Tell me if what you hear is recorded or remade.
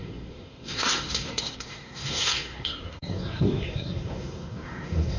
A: remade